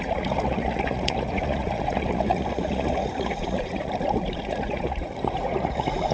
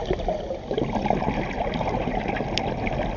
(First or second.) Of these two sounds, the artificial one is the first